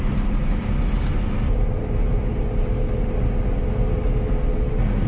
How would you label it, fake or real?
real